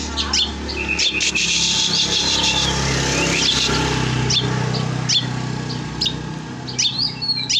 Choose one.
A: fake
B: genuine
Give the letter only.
B